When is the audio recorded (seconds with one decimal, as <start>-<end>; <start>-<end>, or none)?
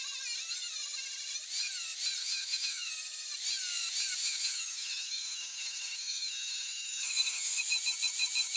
0.0-2.2; 2.9-4.2; 7.6-8.6